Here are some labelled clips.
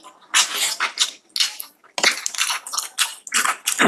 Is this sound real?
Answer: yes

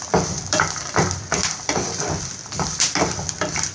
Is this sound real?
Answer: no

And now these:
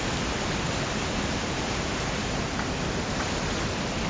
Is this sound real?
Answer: yes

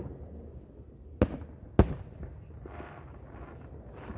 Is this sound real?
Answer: yes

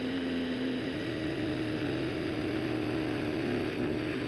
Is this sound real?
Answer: yes